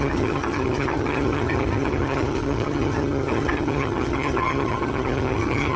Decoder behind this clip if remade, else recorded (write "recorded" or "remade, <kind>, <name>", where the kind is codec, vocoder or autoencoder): remade, vocoder, HiFi-GAN